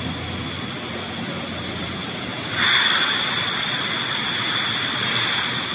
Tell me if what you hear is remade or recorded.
recorded